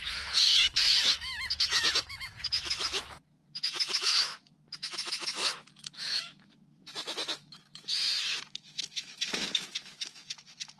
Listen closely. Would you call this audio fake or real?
fake